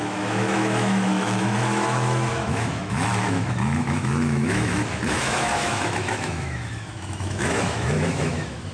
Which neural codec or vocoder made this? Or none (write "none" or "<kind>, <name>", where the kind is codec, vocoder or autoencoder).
autoencoder, DAC-VAE